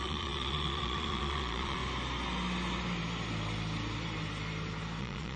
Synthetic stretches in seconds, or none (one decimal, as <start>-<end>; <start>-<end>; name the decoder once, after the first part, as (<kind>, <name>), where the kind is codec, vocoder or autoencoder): 0.0-1.8 (vocoder, Vocos); 5.0-5.4